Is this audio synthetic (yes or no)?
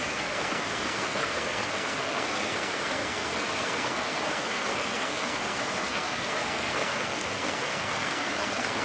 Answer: yes